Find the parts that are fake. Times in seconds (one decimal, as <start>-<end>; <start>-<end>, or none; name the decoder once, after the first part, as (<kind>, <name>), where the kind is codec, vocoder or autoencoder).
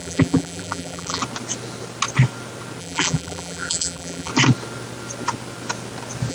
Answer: 0.0-1.2 (vocoder, BigVGAN v2); 2.8-4.3